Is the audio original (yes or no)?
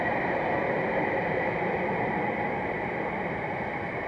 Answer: no